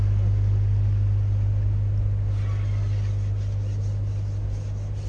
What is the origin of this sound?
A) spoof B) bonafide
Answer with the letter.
B